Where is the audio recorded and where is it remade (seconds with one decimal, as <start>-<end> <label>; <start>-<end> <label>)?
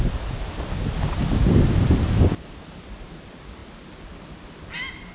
0.0-5.1 recorded